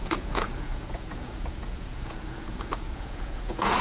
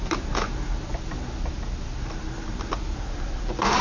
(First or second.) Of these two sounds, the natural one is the second